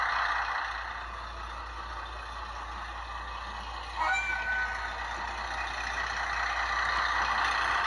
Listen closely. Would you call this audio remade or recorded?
recorded